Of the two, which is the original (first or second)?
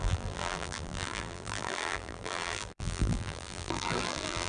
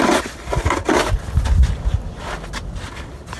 second